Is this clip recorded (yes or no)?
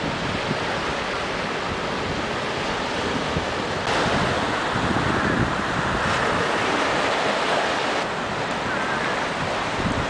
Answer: yes